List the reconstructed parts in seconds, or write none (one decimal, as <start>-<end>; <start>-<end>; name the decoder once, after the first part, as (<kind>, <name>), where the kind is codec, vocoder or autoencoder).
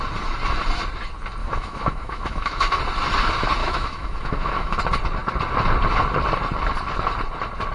1.4-2.8 (autoencoder, DAC-VAE); 3.6-4.8